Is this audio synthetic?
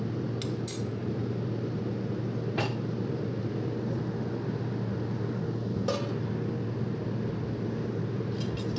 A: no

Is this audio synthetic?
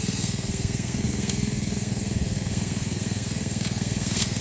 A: yes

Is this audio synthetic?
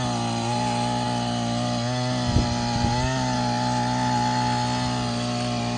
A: no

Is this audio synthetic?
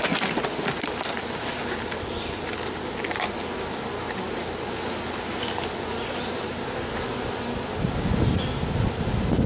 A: no